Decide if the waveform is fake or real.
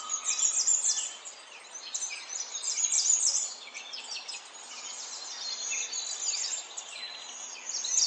real